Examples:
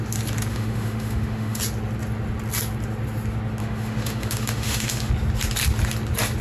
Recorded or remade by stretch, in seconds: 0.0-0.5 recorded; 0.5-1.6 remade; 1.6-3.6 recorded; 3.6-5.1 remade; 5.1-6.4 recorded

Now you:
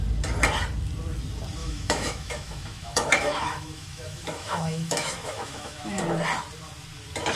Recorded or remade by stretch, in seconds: 0.0-1.6 recorded; 1.6-6.0 remade; 6.0-7.4 recorded

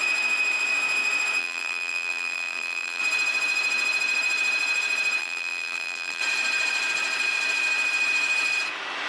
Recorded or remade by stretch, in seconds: 0.0-1.4 recorded; 1.4-3.0 remade; 3.0-5.2 recorded; 5.2-6.2 remade; 6.2-9.1 recorded